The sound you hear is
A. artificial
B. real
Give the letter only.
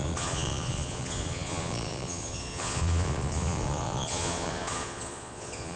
A